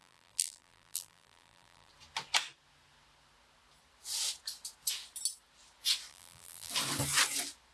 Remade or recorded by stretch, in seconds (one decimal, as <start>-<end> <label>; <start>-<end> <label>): 0.0-1.9 remade; 1.9-6.1 recorded; 6.1-6.7 remade; 6.7-7.7 recorded